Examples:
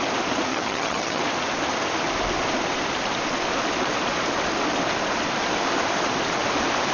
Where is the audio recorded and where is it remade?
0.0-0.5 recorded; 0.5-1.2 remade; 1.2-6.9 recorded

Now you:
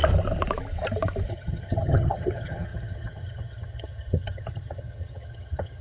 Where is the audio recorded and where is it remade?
0.0-1.3 recorded; 1.3-5.8 remade

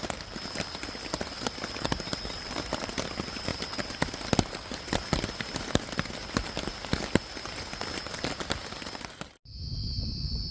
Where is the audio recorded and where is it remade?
0.0-10.5 recorded

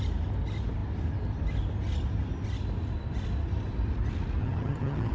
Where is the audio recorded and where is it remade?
0.0-4.4 recorded; 4.4-5.1 remade